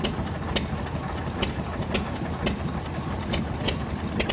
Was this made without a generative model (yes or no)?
yes